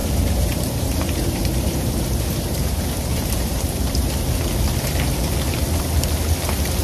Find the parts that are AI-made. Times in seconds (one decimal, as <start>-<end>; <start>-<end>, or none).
0.0-4.1